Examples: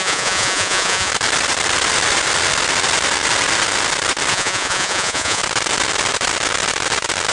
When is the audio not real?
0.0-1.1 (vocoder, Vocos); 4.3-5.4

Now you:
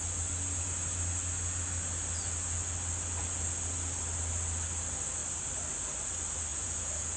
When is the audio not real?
6.5-7.2 (vocoder, Vocos)

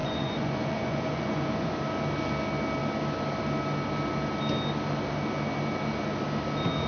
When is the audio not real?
0.0-1.8 (vocoder, Vocos)

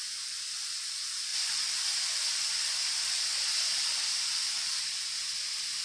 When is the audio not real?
none

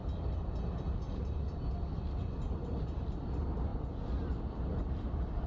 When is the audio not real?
none

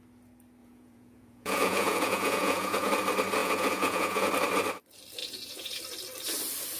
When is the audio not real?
0.6-2.9 (vocoder, Vocos); 3.4-4.3; 5.2-5.8

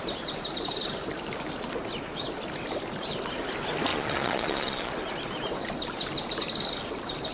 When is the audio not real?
3.9-4.9 (vocoder, Vocos)

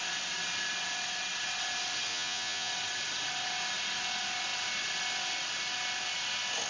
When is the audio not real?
2.1-2.7 (vocoder, Vocos)